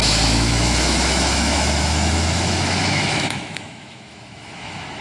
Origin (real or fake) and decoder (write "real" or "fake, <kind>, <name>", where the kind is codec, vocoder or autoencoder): fake, autoencoder, DAC-VAE